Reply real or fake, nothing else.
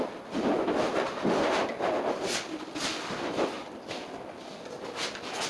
real